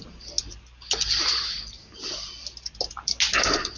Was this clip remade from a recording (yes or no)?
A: no